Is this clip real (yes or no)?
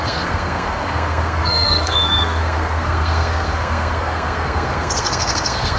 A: no